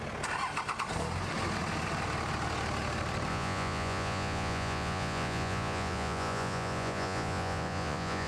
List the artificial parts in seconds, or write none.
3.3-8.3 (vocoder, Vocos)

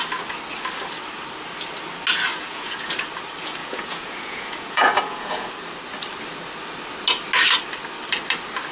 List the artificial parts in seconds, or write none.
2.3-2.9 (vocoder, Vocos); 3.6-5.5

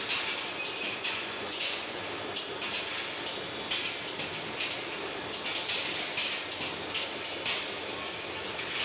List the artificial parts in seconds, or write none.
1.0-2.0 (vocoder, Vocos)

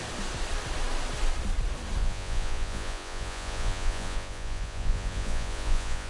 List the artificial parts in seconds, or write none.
2.0-6.1 (vocoder, Vocos)